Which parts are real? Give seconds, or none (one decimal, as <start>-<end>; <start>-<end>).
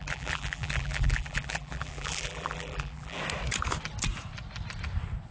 3.2-5.3